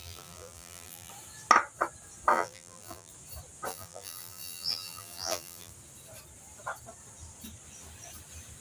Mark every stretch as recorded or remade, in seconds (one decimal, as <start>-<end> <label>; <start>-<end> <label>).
0.0-1.1 remade; 1.1-2.3 recorded; 2.3-3.1 remade; 3.1-3.7 recorded; 3.7-5.7 remade; 5.7-8.6 recorded